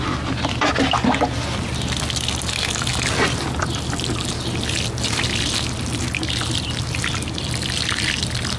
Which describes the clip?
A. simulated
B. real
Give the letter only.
B